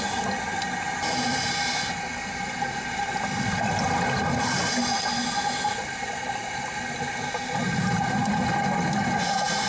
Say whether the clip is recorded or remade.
recorded